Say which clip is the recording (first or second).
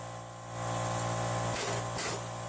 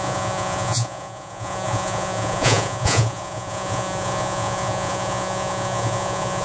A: first